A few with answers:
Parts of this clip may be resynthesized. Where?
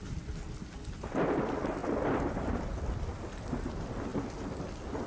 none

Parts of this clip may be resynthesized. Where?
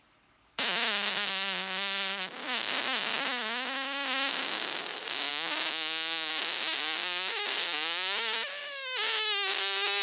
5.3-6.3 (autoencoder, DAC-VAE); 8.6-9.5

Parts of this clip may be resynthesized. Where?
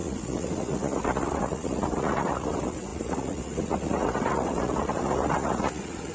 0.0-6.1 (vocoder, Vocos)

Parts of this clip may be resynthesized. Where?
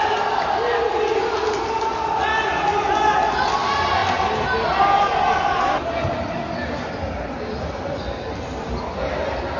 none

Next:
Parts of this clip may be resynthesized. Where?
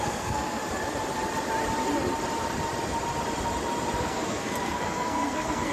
0.0-0.6 (codec, SNAC); 4.0-5.7